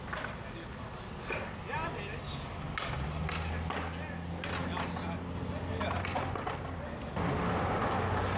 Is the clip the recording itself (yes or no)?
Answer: yes